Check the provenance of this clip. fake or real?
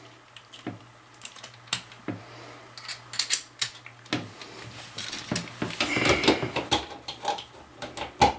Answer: real